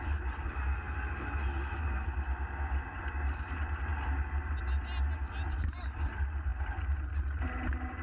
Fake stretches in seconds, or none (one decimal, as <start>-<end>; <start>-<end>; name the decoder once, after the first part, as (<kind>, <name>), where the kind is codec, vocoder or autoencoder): none